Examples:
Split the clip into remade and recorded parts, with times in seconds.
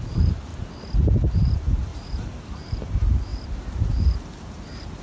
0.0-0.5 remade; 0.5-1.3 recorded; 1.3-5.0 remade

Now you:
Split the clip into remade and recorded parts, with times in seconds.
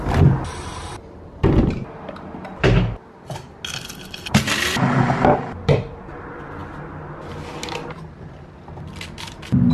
0.0-9.7 recorded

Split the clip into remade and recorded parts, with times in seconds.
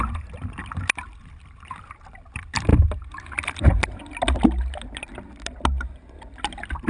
0.0-0.6 remade; 0.6-1.2 recorded; 1.2-2.7 remade; 2.7-5.8 recorded; 5.8-6.9 remade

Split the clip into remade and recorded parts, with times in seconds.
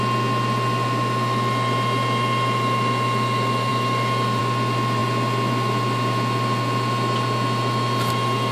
0.0-8.5 recorded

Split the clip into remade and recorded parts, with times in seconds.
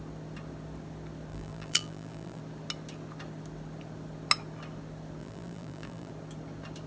0.0-1.3 recorded; 1.3-2.4 remade; 2.4-5.2 recorded; 5.2-6.1 remade; 6.1-6.9 recorded